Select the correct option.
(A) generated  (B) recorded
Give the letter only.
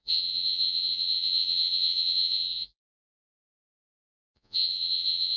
A